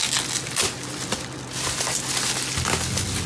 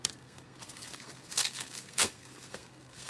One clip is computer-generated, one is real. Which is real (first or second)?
first